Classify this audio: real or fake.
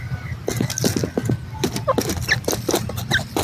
real